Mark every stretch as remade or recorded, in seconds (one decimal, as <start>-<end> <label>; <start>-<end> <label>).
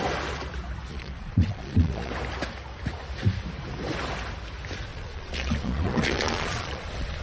0.0-0.9 recorded; 0.9-2.1 remade; 2.1-4.9 recorded; 4.9-7.2 remade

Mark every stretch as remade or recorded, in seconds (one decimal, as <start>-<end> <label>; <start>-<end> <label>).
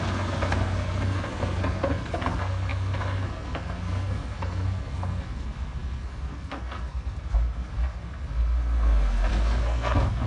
0.0-10.3 remade